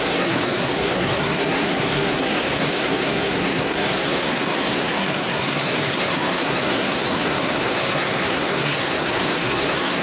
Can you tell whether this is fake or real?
fake